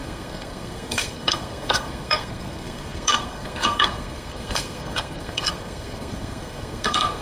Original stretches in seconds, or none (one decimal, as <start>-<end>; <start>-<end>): none